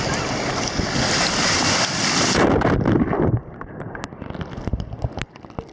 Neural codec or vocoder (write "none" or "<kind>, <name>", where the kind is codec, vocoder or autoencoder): none